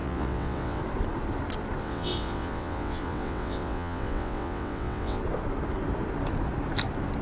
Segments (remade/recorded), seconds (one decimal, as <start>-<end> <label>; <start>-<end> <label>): 0.0-0.8 remade; 0.8-1.8 recorded; 1.8-5.2 remade; 5.2-7.2 recorded